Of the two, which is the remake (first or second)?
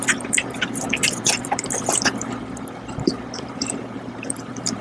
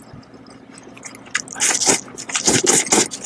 first